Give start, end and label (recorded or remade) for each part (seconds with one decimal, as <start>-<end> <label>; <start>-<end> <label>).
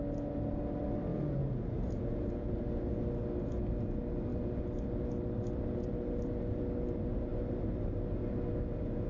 0.0-1.1 recorded; 1.1-2.5 remade; 2.5-9.1 recorded